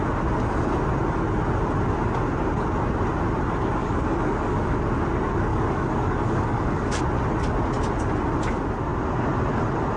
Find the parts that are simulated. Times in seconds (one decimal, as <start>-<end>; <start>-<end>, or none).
3.8-4.8; 5.5-7.0